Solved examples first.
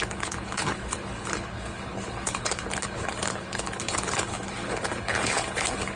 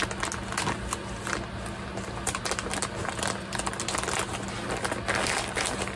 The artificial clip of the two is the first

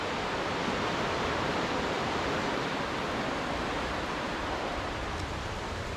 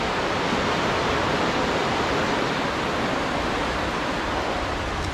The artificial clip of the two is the first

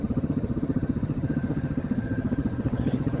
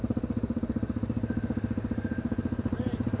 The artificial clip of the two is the first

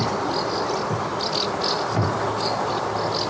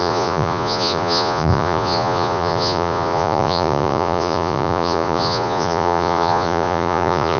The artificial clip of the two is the second